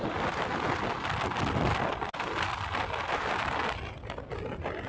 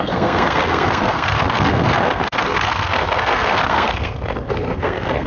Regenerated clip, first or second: second